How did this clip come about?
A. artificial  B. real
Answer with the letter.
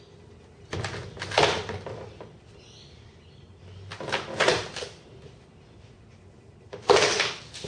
B